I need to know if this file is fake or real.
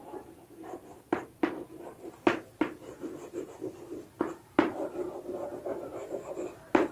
fake